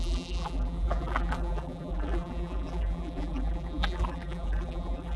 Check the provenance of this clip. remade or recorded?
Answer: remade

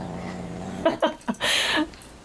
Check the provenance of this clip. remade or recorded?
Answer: remade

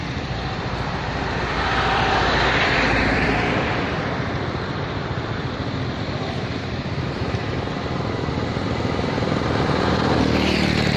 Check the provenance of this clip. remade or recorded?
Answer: remade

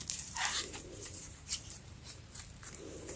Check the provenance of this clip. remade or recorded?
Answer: remade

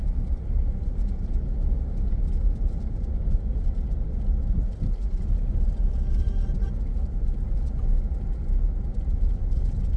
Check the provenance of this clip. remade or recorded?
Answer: recorded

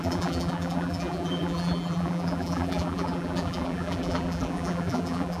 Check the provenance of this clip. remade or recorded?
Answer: remade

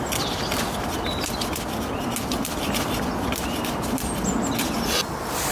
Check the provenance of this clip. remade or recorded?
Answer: recorded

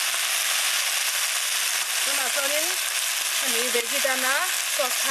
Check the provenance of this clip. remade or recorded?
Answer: recorded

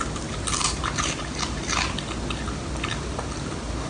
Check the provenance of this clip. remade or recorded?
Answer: recorded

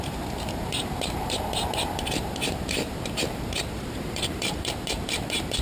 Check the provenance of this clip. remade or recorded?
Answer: remade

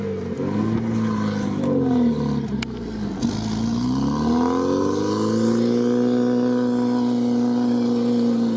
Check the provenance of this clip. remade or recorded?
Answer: recorded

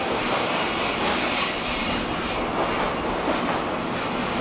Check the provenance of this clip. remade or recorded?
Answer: recorded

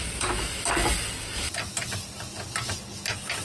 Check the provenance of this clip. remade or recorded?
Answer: recorded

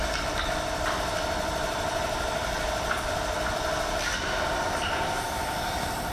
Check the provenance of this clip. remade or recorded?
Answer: remade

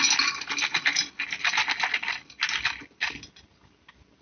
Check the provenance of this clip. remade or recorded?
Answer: recorded